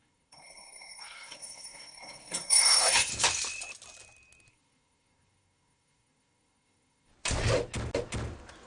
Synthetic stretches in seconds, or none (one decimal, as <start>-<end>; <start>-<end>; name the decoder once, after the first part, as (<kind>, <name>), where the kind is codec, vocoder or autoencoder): 0.0-3.1 (codec, SNAC); 4.5-7.1